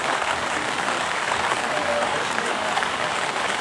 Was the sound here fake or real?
fake